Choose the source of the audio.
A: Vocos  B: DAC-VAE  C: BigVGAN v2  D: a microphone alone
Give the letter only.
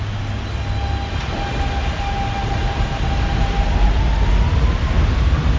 D